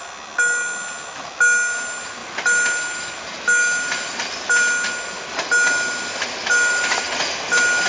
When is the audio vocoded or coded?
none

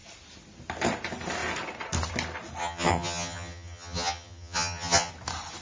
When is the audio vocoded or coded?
2.6-5.1 (vocoder, HiFi-GAN)